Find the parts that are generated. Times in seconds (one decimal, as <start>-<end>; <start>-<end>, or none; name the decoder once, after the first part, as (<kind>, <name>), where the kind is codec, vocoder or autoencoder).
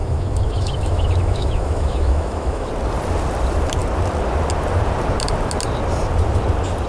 0.0-2.7 (autoencoder, DAC-VAE)